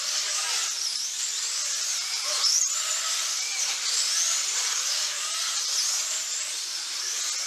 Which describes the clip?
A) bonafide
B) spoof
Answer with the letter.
A